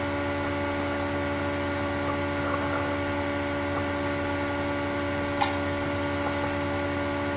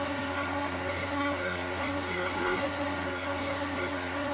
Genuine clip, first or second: first